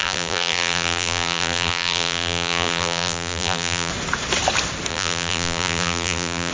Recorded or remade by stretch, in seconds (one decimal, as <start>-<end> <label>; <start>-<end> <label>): 0.0-3.9 remade; 3.9-4.9 recorded; 4.9-6.5 remade